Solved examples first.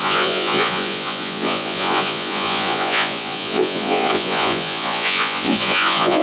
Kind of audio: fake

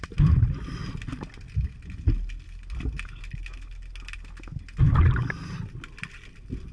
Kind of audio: real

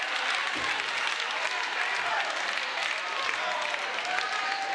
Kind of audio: real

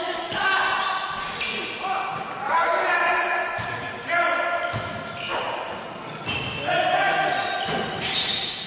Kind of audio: real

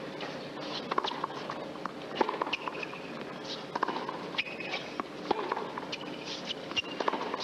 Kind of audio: real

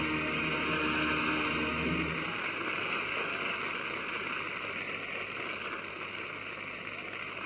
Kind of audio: real